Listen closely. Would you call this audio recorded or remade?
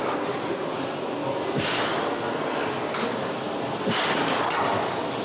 recorded